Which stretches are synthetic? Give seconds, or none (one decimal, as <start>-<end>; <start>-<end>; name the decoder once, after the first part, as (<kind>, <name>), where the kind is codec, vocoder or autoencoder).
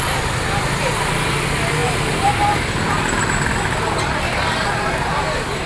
none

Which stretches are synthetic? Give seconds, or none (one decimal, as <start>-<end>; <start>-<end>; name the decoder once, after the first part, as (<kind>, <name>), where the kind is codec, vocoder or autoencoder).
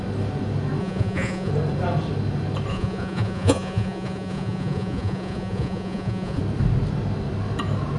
0.8-1.5 (vocoder, Vocos); 2.7-6.4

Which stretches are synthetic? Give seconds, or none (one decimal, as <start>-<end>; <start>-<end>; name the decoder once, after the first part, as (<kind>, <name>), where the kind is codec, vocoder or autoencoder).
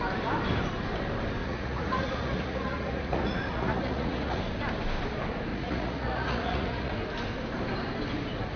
1.4-4.4 (vocoder, Vocos); 5.5-6.9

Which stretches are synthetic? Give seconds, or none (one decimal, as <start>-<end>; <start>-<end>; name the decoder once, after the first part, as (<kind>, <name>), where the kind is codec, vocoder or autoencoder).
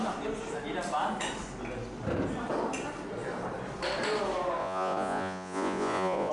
4.6-6.3 (vocoder, Vocos)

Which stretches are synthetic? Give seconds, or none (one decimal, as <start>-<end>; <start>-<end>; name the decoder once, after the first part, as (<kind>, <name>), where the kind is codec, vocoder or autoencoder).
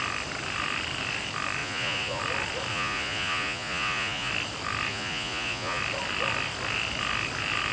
1.6-2.2 (vocoder, Vocos); 2.7-4.3; 4.9-5.8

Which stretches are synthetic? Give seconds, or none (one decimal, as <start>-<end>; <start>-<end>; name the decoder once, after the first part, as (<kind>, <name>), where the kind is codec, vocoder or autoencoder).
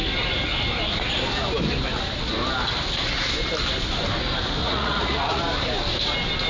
4.6-5.4 (vocoder, Vocos)